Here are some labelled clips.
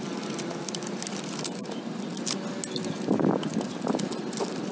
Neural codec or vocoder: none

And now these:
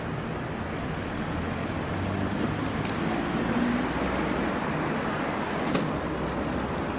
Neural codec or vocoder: none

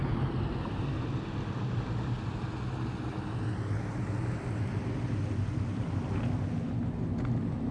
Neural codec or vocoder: none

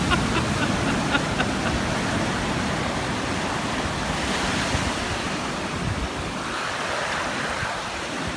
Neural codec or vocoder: none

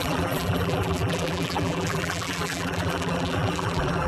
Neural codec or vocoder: vocoder, BigVGAN v2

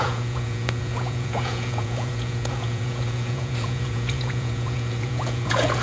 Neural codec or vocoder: vocoder, Vocos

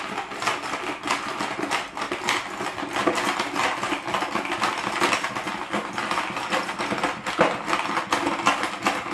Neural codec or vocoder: none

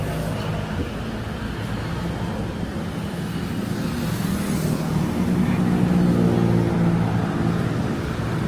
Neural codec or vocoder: none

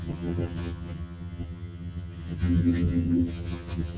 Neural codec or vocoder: vocoder, HiFi-GAN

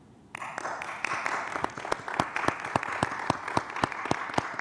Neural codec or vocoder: none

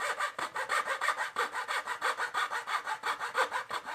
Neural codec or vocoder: none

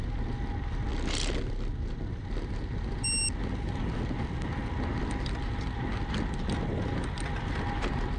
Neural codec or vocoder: none